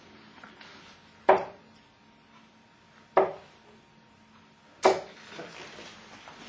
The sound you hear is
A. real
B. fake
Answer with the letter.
A